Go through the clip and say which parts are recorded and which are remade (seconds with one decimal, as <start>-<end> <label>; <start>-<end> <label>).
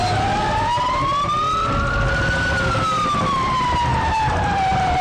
0.0-3.9 recorded; 3.9-5.0 remade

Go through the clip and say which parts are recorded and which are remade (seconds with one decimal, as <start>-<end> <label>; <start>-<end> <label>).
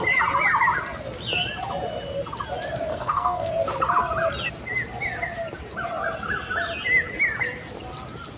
0.0-2.9 recorded; 2.9-3.5 remade; 3.5-8.4 recorded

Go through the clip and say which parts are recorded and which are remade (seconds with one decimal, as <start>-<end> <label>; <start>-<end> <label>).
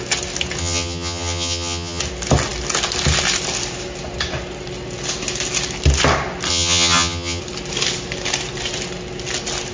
0.0-0.6 recorded; 0.6-2.0 remade; 2.0-6.5 recorded; 6.5-7.4 remade; 7.4-9.7 recorded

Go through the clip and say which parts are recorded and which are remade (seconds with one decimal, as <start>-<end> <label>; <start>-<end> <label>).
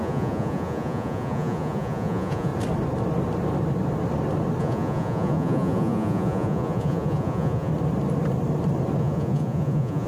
0.0-2.5 remade; 2.5-4.6 recorded; 4.6-7.7 remade; 7.7-9.0 recorded; 9.0-10.1 remade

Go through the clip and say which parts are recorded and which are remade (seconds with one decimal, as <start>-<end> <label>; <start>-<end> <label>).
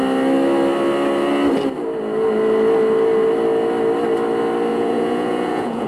0.0-4.7 recorded; 4.7-5.9 remade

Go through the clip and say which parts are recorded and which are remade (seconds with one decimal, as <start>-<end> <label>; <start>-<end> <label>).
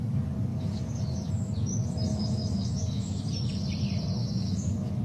0.0-0.5 recorded; 0.5-1.3 remade; 1.3-2.1 recorded; 2.1-3.2 remade; 3.2-4.2 recorded; 4.2-5.0 remade